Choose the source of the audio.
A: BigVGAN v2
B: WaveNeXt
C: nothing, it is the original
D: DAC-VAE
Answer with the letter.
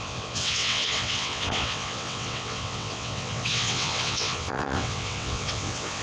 B